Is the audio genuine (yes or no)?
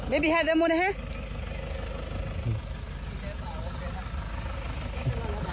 yes